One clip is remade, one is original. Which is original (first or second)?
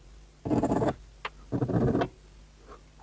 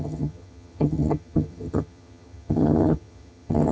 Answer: first